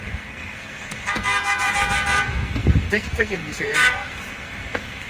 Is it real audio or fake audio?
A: fake